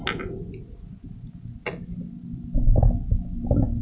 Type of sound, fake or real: real